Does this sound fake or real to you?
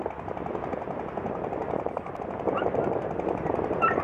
real